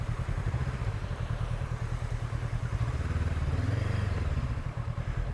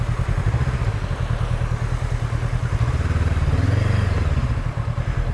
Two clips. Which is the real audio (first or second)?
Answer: second